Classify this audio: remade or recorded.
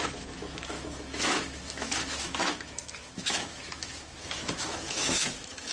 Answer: remade